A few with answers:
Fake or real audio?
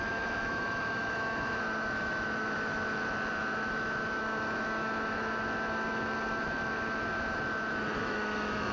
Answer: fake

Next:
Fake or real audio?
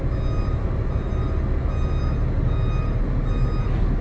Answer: real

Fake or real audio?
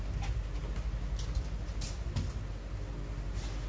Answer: real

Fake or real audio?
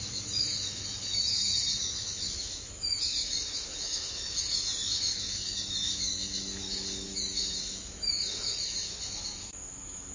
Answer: fake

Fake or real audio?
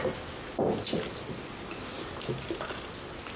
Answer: real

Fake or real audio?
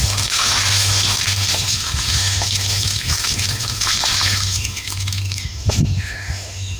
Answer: fake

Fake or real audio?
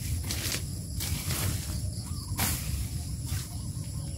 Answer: real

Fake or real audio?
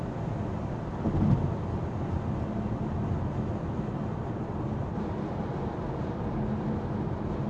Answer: real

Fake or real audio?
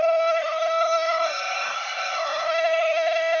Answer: fake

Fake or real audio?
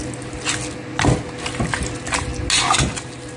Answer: real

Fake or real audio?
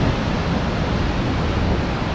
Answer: real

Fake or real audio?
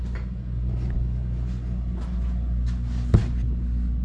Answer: real